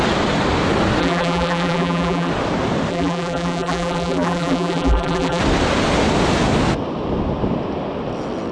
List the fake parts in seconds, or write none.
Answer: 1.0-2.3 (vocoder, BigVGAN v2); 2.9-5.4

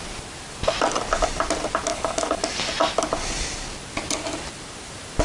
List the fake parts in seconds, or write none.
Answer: 1.9-2.6 (codec, DAC)

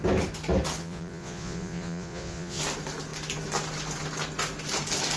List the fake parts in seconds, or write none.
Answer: 0.8-2.6 (vocoder, Vocos)

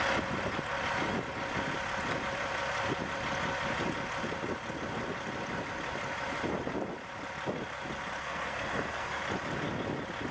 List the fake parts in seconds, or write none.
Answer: 8.2-9.2 (codec, SNAC)

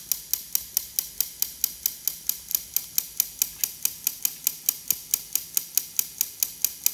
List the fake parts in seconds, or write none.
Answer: none

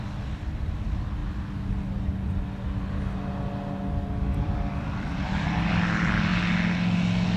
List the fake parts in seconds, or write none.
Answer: 0.0-1.2 (vocoder, BigVGAN v2); 4.4-6.3

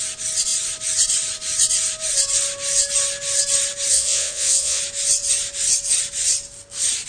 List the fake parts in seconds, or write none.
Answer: 3.9-4.8 (vocoder, Vocos)

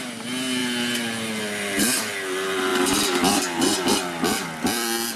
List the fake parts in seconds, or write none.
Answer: none